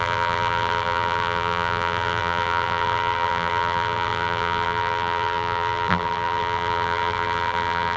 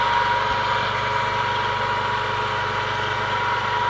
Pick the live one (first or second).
second